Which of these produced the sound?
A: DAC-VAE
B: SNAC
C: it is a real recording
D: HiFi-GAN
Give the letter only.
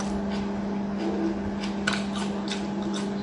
C